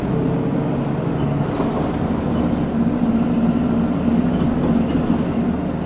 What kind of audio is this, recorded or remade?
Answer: recorded